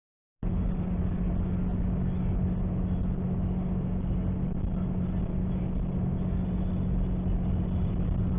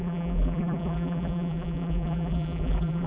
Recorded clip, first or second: first